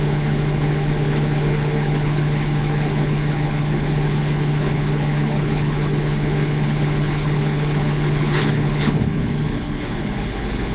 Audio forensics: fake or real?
fake